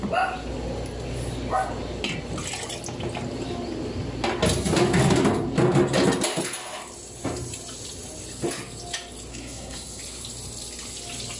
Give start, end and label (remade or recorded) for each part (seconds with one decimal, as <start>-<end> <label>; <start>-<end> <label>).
0.0-9.3 recorded; 9.3-10.0 remade; 10.0-11.4 recorded